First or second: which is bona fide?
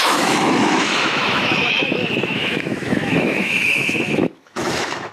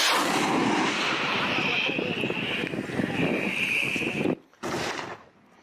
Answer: second